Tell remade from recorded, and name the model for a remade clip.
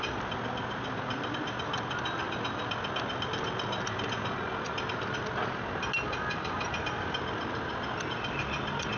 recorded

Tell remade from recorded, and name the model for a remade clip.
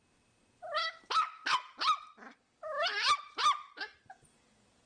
recorded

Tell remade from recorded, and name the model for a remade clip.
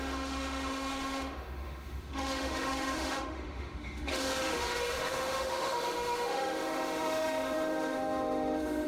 remade, autoencoder, DAC-VAE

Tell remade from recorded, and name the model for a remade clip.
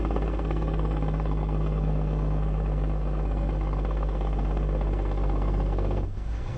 remade, codec, SNAC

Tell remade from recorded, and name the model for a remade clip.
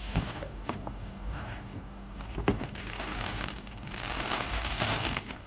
remade, codec, DAC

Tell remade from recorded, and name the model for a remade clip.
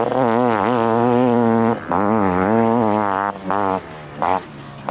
recorded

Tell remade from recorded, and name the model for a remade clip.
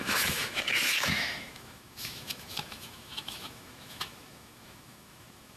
remade, autoencoder, DAC-VAE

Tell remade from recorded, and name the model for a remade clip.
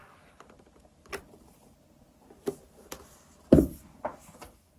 remade, vocoder, BigVGAN v2